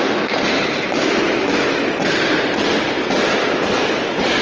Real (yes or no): yes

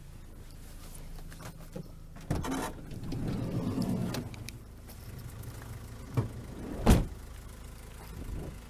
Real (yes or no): yes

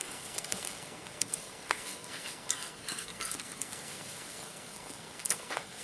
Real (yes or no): no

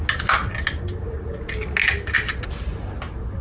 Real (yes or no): yes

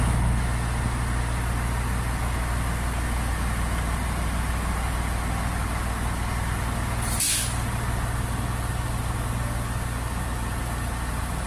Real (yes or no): yes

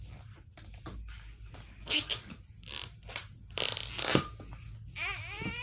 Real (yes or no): yes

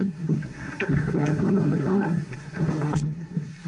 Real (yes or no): no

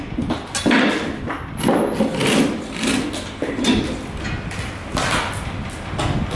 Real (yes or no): yes